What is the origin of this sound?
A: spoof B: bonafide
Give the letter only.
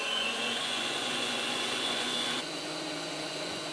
A